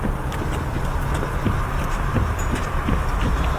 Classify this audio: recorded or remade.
recorded